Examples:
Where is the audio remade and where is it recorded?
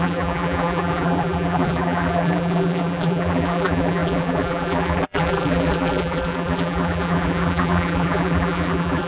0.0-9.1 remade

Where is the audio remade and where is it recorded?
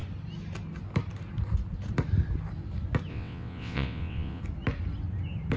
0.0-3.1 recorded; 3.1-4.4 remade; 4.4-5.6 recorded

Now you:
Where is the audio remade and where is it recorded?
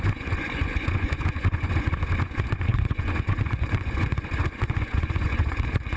0.0-6.0 remade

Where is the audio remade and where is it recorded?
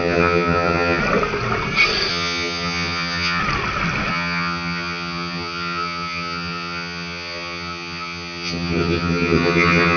0.0-1.0 remade; 1.0-2.1 recorded; 2.1-3.4 remade; 3.4-4.1 recorded; 4.1-10.0 remade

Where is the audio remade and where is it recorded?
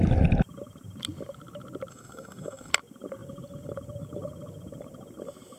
0.0-1.9 recorded; 1.9-2.7 remade; 2.7-5.6 recorded